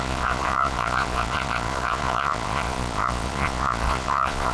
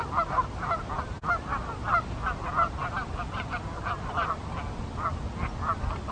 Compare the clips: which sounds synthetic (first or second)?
first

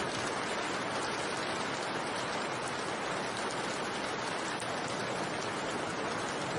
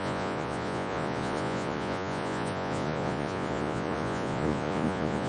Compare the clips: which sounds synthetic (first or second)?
second